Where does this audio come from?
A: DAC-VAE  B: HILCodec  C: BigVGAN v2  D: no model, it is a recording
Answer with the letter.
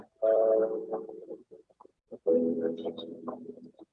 C